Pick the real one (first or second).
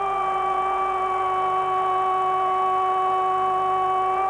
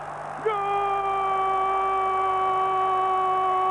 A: second